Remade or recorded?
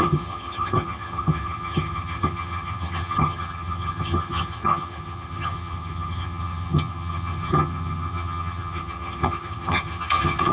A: remade